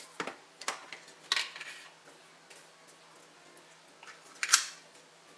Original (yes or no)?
yes